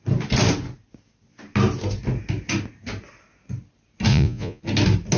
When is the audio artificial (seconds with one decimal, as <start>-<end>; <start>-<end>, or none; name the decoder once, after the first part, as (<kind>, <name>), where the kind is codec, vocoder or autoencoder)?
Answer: 4.1-4.6 (vocoder, Vocos)